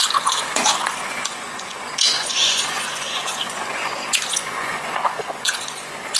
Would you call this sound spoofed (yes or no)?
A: yes